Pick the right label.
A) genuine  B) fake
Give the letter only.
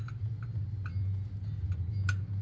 A